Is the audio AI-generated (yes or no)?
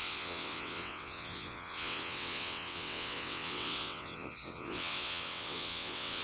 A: yes